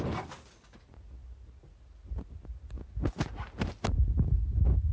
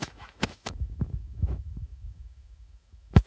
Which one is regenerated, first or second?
second